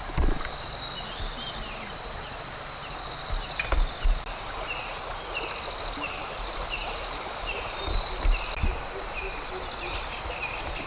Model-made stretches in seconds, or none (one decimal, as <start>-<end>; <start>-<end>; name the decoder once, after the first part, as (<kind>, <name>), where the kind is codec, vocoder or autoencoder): none